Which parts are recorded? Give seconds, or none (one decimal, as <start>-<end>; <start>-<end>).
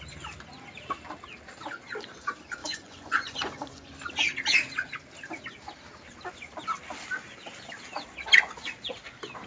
0.0-2.6; 3.9-9.5